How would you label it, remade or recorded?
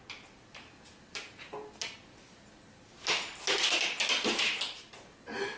recorded